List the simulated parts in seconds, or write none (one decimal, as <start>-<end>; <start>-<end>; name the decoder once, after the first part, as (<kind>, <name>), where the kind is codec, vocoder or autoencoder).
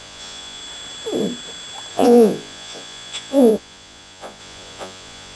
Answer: 0.0-0.6 (vocoder, Vocos); 1.9-5.4